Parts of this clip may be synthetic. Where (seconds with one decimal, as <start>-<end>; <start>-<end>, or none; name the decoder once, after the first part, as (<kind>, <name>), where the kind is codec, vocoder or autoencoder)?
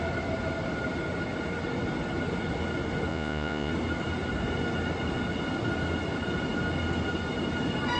3.1-3.7 (vocoder, Vocos)